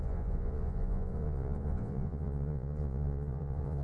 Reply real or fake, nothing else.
fake